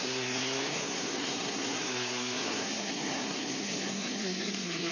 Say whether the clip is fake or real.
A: fake